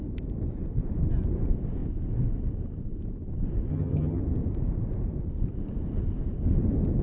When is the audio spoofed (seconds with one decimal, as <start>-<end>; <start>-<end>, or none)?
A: 3.7-4.2